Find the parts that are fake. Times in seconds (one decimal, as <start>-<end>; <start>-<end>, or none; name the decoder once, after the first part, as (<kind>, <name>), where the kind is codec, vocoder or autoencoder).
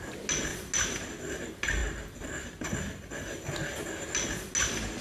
none